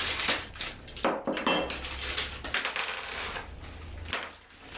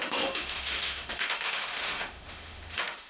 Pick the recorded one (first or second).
first